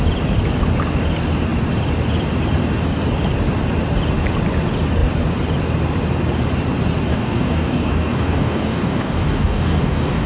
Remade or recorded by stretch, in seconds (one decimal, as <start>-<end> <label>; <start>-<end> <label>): 0.0-7.1 recorded; 7.1-10.3 remade